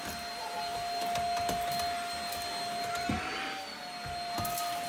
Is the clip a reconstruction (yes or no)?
no